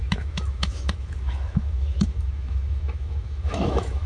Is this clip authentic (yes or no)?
no